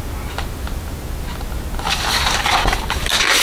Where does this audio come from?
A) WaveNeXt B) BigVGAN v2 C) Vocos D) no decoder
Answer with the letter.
D